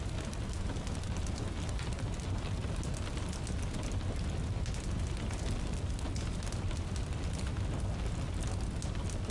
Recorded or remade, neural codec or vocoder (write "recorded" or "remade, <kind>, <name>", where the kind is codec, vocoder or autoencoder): recorded